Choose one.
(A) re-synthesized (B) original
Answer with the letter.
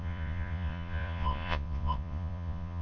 A